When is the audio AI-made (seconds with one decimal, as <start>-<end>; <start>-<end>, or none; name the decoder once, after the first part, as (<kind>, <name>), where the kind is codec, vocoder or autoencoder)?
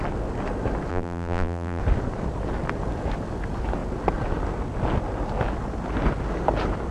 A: 0.9-1.8 (vocoder, BigVGAN v2)